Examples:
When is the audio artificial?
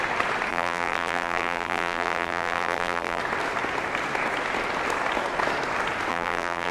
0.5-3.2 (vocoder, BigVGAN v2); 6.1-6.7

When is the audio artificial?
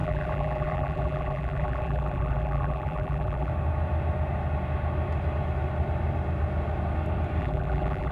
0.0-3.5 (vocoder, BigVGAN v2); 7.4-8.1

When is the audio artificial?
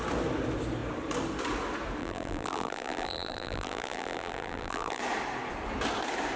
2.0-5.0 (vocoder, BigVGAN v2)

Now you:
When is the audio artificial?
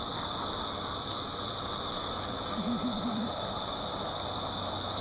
none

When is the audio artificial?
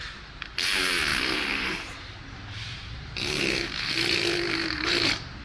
0.0-5.4 (vocoder, BigVGAN v2)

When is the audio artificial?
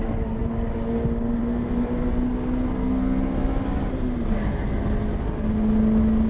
none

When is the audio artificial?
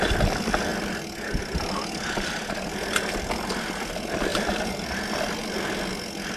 4.3-4.9 (vocoder, BigVGAN v2)